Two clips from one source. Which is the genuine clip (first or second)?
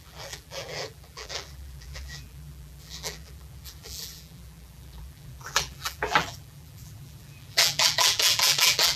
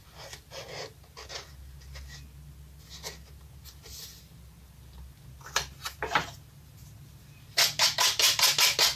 second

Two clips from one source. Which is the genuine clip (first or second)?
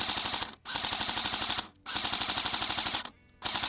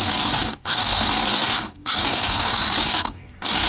first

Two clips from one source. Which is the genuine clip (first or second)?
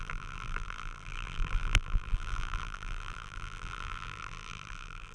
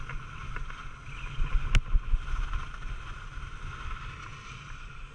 second